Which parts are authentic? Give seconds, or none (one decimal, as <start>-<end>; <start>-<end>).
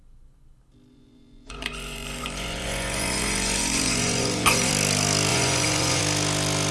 0.0-0.9; 4.7-5.3; 6.0-6.7